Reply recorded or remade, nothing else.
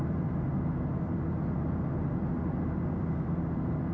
recorded